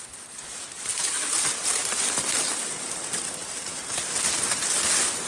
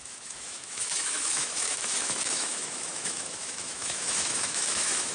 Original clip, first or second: first